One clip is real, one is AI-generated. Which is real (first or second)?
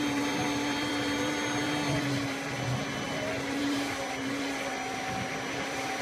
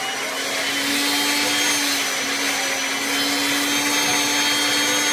second